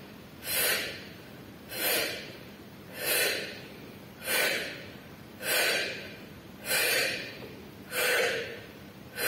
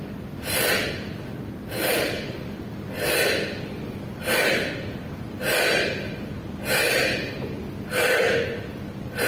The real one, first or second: second